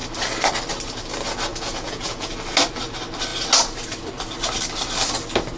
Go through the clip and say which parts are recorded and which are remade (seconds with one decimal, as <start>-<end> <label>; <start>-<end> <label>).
0.0-1.5 recorded; 1.5-2.3 remade; 2.3-5.6 recorded